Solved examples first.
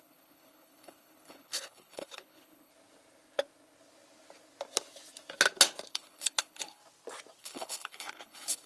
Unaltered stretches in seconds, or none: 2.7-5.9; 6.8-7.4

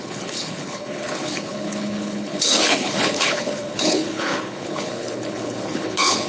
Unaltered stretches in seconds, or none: none

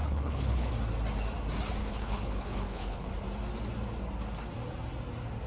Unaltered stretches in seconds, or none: 0.7-1.8; 3.1-5.5

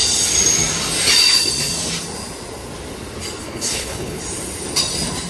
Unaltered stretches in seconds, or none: 0.0-3.4; 4.2-5.3